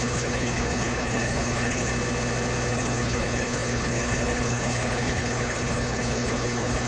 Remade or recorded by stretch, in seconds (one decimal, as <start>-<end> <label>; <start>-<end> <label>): 0.0-1.9 remade; 1.9-2.7 recorded; 2.7-6.9 remade